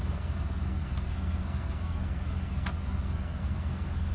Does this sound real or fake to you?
fake